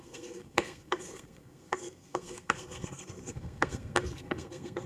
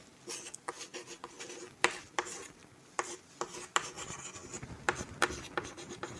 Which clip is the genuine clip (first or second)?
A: second